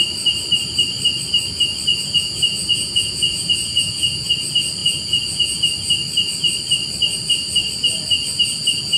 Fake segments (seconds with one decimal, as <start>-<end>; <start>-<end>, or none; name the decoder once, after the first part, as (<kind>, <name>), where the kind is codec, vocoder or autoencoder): 1.9-4.3 (vocoder, Vocos); 4.8-5.6